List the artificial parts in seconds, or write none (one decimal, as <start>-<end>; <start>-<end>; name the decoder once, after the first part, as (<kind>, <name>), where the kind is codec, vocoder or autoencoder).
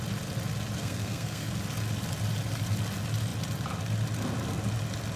0.8-1.5 (codec, SNAC)